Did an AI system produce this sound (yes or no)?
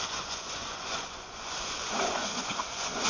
yes